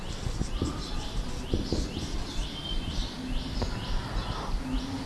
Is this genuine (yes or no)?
yes